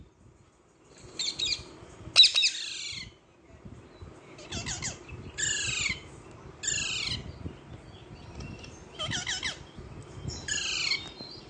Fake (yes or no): no